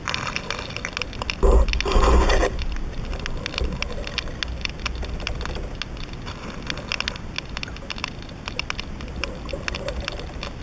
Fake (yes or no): no